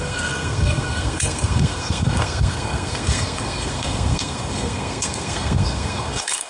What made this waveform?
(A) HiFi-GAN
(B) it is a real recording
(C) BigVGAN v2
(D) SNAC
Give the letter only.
D